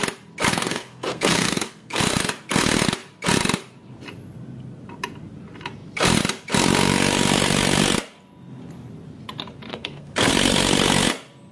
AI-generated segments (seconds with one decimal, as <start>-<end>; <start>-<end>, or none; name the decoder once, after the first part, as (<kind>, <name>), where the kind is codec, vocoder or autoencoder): 0.5-2.0 (codec, SNAC); 9.7-10.3